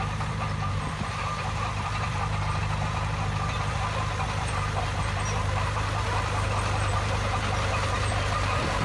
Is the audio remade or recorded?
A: remade